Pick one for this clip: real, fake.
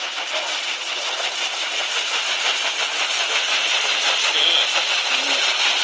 real